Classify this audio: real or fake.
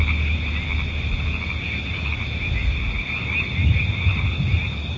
real